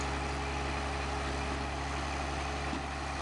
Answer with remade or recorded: recorded